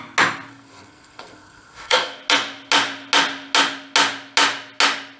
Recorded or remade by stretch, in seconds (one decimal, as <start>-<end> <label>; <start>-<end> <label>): 0.0-0.5 recorded; 0.5-2.2 remade; 2.2-5.2 recorded